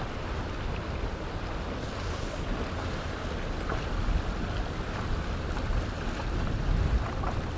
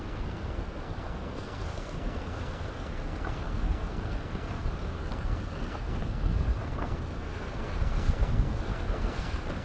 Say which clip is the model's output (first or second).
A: second